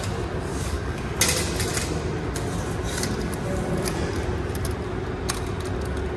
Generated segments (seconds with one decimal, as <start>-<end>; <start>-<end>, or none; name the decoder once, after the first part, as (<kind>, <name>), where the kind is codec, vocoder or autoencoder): 0.5-1.1 (codec, DAC)